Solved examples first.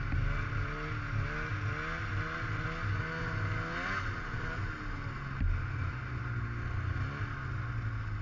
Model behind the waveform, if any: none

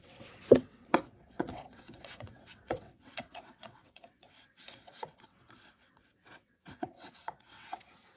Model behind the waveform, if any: vocoder, WaveNeXt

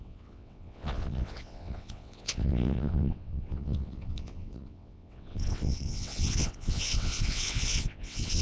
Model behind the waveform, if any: vocoder, WaveNeXt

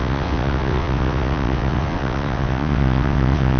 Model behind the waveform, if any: vocoder, WaveNeXt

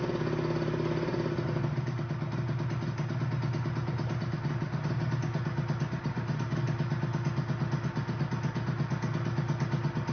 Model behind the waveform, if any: none